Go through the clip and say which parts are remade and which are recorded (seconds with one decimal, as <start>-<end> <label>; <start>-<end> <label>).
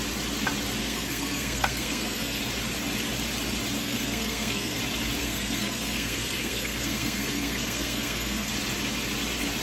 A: 0.0-0.8 recorded; 0.8-2.4 remade; 2.4-3.8 recorded; 3.8-4.8 remade; 4.8-5.2 recorded; 5.2-8.5 remade; 8.5-9.6 recorded